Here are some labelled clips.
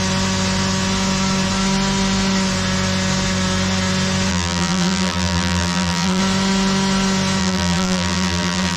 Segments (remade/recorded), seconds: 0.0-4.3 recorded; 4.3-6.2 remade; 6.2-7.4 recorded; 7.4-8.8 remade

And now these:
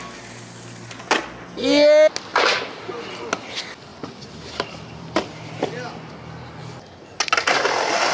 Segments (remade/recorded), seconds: 0.0-2.3 recorded; 2.3-2.9 remade; 2.9-3.9 recorded; 3.9-6.1 remade; 6.1-8.1 recorded

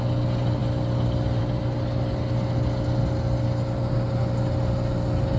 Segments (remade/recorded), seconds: 0.0-0.6 recorded; 0.6-1.4 remade; 1.4-5.4 recorded

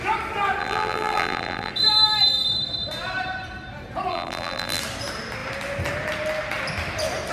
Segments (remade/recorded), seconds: 0.0-0.6 recorded; 0.6-1.7 remade; 1.7-4.1 recorded; 4.1-4.8 remade; 4.8-7.3 recorded

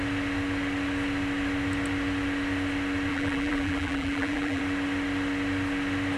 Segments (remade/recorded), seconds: 0.0-3.1 recorded; 3.1-4.6 remade; 4.6-6.2 recorded

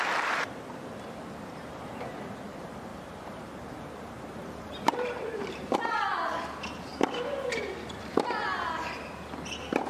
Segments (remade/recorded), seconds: 0.0-2.9 recorded; 2.9-5.5 remade; 5.5-9.9 recorded

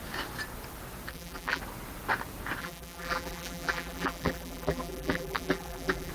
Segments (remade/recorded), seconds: 0.0-1.1 recorded; 1.1-1.6 remade; 1.6-2.6 recorded; 2.6-6.1 remade